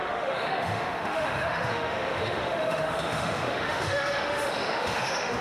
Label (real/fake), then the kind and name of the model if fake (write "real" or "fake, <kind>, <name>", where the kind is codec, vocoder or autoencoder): fake, autoencoder, DAC-VAE